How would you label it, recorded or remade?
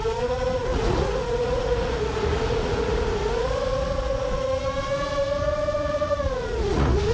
remade